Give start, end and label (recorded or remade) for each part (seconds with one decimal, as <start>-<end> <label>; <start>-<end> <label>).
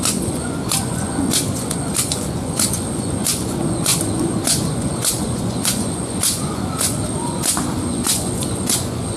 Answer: 0.0-9.2 remade